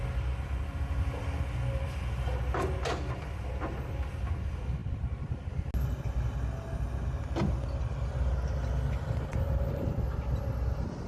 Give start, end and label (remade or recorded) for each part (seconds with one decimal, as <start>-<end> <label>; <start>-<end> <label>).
0.0-11.1 recorded